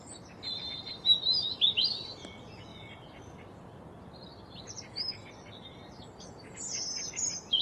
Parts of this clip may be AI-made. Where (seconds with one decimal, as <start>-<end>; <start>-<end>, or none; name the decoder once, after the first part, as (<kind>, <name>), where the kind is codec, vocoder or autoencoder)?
none